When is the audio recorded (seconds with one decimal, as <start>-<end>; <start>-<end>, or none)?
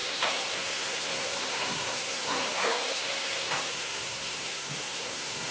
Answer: none